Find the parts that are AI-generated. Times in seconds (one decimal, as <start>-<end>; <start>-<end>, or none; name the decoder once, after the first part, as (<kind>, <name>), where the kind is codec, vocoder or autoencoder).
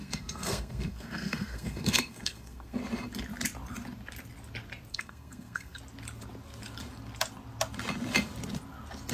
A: 0.0-2.8 (codec, SNAC); 4.9-5.8